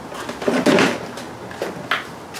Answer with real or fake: real